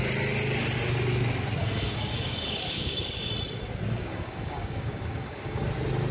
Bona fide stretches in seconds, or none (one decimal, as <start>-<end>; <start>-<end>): 0.0-1.6; 3.3-4.0; 5.6-6.1